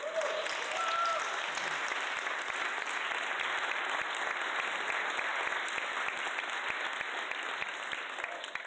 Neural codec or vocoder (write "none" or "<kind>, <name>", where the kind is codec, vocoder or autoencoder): none